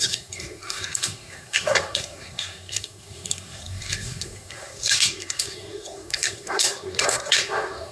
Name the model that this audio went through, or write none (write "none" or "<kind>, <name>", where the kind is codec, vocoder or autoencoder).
codec, SNAC